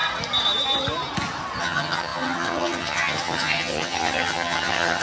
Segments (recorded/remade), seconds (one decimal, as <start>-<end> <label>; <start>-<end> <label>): 0.0-1.6 recorded; 1.6-5.0 remade